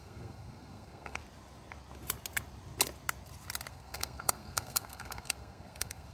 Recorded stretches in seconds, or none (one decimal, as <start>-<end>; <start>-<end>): 1.2-3.7